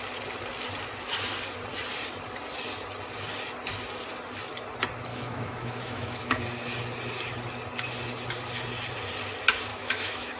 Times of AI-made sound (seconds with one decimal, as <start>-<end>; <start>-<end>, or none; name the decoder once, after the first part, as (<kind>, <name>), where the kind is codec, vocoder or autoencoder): 5.1-6.4 (autoencoder, DAC-VAE); 9.7-10.4